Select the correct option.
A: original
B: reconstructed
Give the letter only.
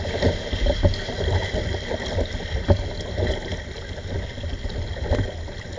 A